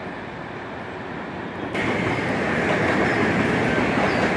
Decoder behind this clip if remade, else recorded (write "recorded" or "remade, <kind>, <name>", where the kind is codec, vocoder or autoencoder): recorded